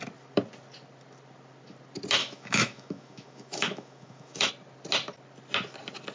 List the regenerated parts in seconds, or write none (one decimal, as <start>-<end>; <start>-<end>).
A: 2.2-4.5